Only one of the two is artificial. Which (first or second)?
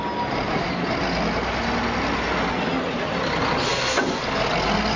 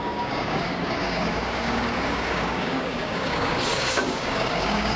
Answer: second